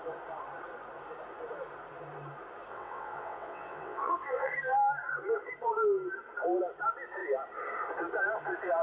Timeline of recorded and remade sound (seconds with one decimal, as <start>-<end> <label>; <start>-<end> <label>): 0.0-2.7 recorded; 2.7-4.5 remade; 4.5-8.8 recorded